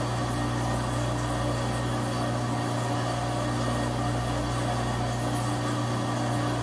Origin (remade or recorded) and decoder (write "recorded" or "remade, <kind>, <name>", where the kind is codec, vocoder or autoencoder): recorded